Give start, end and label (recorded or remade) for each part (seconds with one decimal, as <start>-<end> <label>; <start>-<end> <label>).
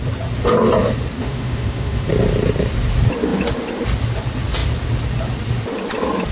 0.0-1.2 recorded; 1.2-2.1 remade; 2.1-6.3 recorded